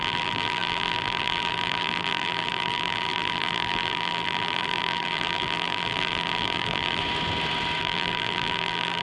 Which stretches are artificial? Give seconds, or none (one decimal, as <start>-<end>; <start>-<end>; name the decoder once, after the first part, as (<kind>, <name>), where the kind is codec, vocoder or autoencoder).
0.0-7.0 (vocoder, BigVGAN v2); 7.8-9.0